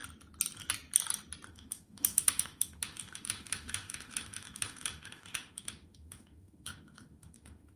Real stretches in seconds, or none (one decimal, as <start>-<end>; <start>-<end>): 0.0-1.5